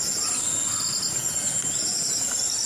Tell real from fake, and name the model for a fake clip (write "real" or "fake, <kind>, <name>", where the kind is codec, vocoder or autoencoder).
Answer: real